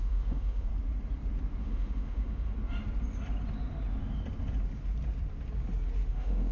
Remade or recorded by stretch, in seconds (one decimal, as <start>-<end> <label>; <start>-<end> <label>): 0.0-0.7 remade; 0.7-1.6 recorded; 1.6-2.5 remade; 2.5-6.1 recorded; 6.1-6.5 remade